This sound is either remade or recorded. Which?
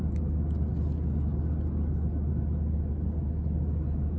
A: recorded